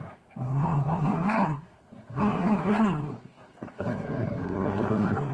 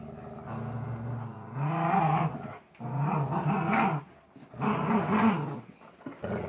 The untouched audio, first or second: second